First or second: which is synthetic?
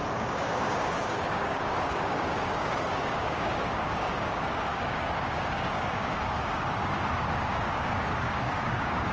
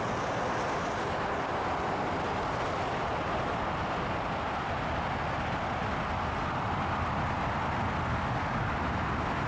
first